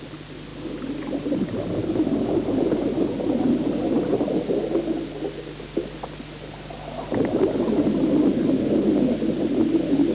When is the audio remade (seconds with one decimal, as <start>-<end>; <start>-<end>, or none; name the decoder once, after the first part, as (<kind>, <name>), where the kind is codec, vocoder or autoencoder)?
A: none